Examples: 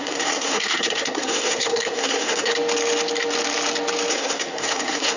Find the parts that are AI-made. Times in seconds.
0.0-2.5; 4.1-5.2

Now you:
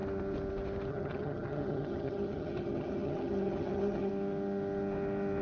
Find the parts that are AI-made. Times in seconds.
0.9-4.1

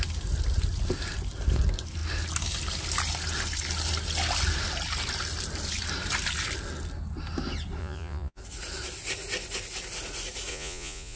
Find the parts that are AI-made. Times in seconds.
7.8-8.4; 10.5-11.2

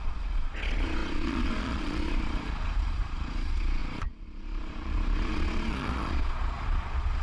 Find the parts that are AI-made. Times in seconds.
0.0-7.2

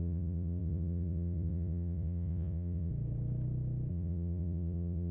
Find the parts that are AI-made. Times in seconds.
0.0-2.9; 3.9-5.1

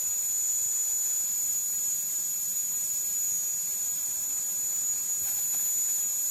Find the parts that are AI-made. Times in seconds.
none

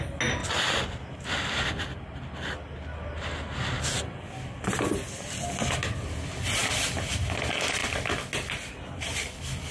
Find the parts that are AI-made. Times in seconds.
0.4-1.3; 6.6-7.1